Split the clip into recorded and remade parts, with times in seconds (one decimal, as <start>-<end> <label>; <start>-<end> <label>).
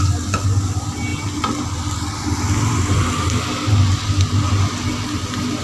0.0-5.6 recorded